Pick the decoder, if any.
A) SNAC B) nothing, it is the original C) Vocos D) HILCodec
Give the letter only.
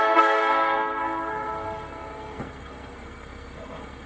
A